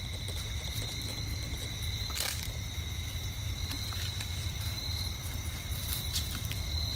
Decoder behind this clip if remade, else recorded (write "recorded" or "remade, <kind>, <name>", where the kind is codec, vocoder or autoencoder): recorded